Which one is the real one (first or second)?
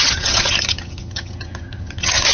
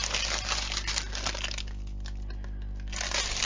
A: second